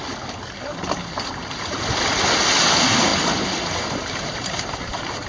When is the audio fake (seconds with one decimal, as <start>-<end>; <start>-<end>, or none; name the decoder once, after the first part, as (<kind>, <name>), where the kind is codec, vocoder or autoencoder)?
1.0-1.8 (vocoder, BigVGAN v2); 3.1-5.3